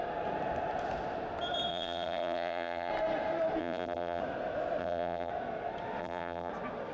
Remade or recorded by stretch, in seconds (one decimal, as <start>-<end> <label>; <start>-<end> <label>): 0.0-1.7 recorded; 1.7-2.9 remade; 2.9-3.6 recorded; 3.6-4.2 remade; 4.2-4.8 recorded; 4.8-5.3 remade; 5.3-6.0 recorded; 6.0-6.5 remade; 6.5-6.9 recorded

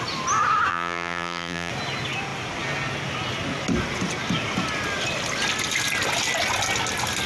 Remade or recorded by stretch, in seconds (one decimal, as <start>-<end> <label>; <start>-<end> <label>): 0.0-0.7 recorded; 0.7-1.7 remade; 1.7-7.3 recorded

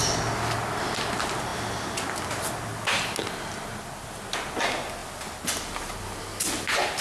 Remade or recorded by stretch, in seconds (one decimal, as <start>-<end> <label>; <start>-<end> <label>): 0.0-7.0 recorded

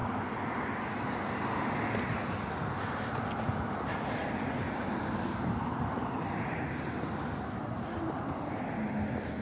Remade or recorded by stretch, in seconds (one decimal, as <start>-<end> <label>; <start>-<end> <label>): 0.0-4.2 recorded; 4.2-6.9 remade; 6.9-9.4 recorded

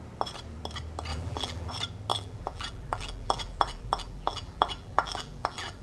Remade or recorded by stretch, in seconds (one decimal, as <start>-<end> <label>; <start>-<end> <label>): 0.0-1.1 recorded; 1.1-1.7 remade; 1.7-2.1 recorded; 2.1-5.8 remade